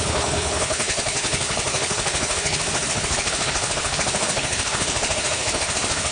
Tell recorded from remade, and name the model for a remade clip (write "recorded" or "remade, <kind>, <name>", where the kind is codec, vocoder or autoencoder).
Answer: remade, codec, HILCodec